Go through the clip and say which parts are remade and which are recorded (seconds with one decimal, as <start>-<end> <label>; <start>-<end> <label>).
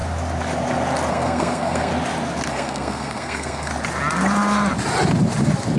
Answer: 0.0-1.1 recorded; 1.1-1.9 remade; 1.9-2.5 recorded; 2.5-3.7 remade; 3.7-5.8 recorded